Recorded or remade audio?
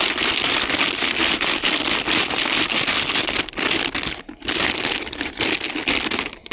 recorded